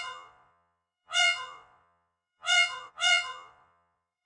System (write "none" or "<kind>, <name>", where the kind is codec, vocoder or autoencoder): vocoder, Vocos